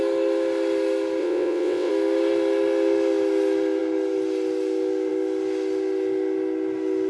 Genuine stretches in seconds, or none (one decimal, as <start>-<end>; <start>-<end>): 0.0-1.2; 1.9-7.1